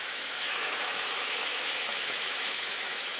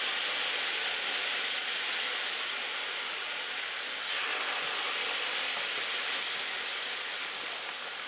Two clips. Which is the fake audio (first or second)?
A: first